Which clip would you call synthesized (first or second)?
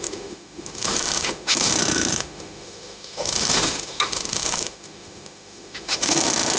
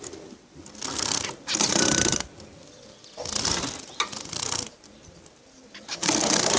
first